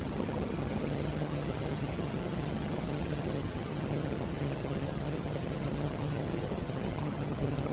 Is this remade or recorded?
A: remade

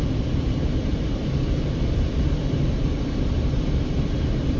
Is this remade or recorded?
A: recorded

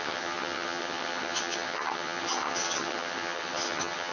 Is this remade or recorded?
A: remade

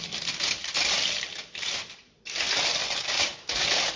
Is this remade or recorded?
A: recorded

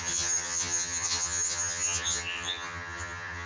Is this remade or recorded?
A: remade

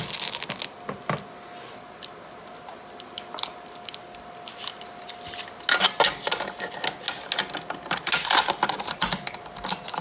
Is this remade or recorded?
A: recorded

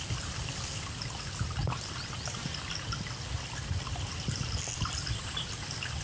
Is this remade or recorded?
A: recorded